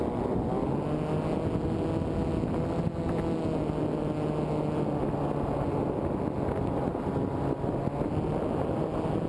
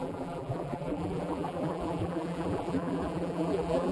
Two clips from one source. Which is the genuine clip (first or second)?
first